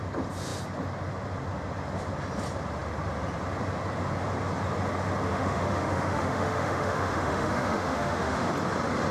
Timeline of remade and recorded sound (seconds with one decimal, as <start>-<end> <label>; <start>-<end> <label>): 0.0-5.3 recorded; 5.3-8.5 remade; 8.5-9.1 recorded